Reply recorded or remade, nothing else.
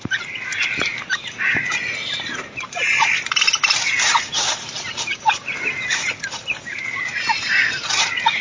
remade